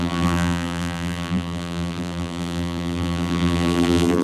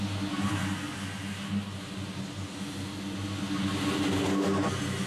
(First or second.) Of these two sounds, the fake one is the first